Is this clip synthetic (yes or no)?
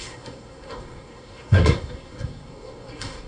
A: yes